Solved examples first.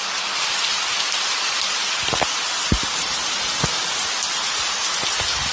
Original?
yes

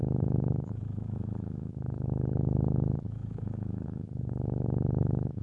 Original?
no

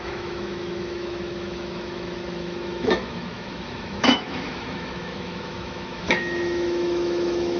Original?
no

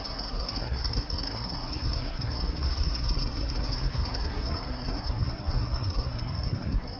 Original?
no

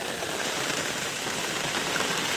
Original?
no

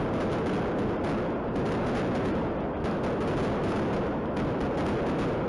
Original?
yes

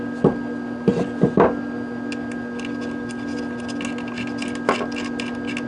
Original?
yes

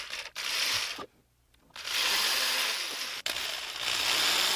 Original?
yes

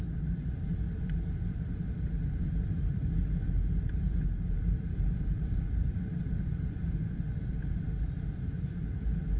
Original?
no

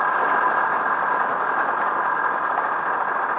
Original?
yes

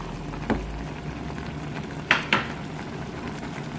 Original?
yes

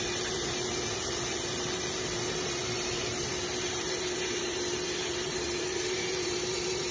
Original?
no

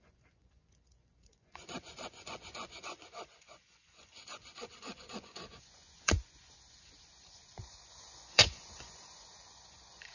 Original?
no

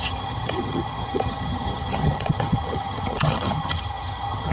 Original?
no